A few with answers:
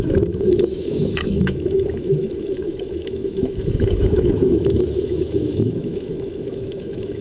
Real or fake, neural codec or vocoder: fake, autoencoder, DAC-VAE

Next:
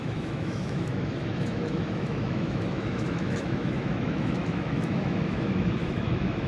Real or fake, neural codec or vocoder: fake, autoencoder, DAC-VAE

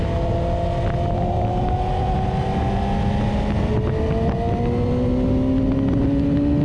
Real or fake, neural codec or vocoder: real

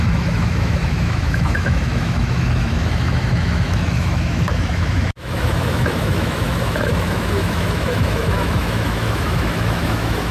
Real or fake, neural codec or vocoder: fake, autoencoder, DAC-VAE